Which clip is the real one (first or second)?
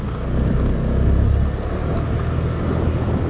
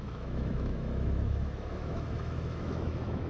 first